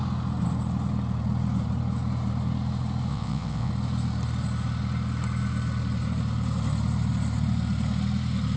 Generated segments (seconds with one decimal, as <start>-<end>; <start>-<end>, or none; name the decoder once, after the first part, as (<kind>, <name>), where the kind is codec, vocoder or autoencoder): 3.1-3.7 (vocoder, WaveNeXt)

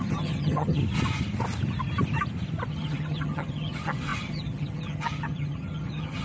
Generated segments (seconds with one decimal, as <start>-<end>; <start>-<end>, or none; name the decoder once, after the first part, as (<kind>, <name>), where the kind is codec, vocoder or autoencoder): 0.0-0.8 (vocoder, HiFi-GAN); 2.7-6.2

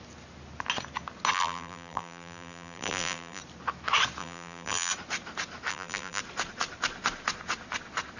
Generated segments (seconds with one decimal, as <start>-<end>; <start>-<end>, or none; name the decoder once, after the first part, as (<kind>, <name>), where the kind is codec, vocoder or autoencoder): 1.3-3.4 (vocoder, BigVGAN v2); 4.2-4.9; 5.7-6.2

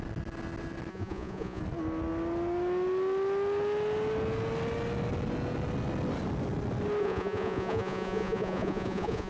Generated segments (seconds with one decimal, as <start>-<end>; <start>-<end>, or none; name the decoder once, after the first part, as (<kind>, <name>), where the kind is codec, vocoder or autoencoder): 0.9-1.6 (vocoder, Vocos); 7.0-9.3

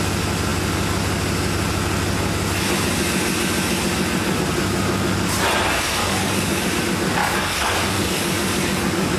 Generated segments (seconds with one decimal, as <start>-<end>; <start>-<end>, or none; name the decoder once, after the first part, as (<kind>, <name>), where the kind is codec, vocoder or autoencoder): 6.0-6.8 (codec, DAC); 7.2-9.2